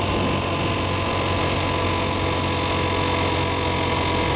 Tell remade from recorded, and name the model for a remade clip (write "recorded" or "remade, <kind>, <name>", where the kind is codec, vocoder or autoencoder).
recorded